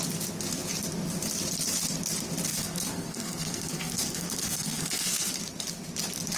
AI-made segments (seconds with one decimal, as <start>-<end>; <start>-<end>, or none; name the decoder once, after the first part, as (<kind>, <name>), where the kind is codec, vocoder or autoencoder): 2.5-5.3 (codec, SNAC)